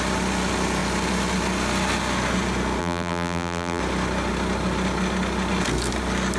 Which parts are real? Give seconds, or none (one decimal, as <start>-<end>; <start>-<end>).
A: 0.0-2.8; 3.8-6.4